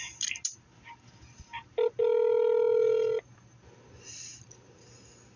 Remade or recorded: recorded